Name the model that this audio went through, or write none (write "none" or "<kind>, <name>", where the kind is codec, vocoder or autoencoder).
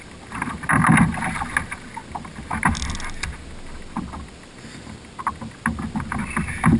none